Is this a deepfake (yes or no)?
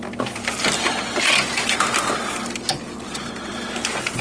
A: no